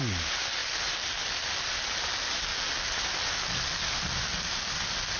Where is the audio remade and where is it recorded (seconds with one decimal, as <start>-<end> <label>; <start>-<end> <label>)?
0.0-2.5 recorded; 2.5-3.4 remade; 3.4-5.2 recorded